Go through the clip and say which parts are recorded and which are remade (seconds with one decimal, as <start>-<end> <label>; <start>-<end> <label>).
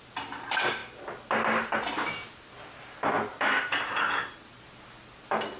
0.0-3.3 recorded; 3.3-3.9 remade; 3.9-5.6 recorded